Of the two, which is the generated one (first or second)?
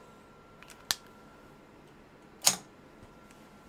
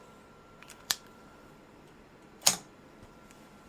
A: second